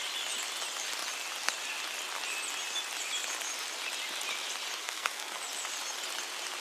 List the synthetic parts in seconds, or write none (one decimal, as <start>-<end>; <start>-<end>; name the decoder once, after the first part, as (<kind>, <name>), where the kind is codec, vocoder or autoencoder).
4.8-5.4 (codec, SNAC)